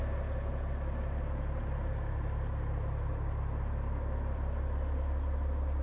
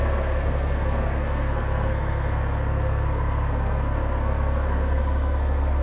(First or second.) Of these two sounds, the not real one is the second